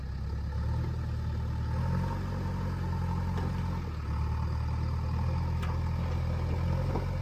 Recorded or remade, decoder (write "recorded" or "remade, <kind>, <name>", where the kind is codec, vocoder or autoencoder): recorded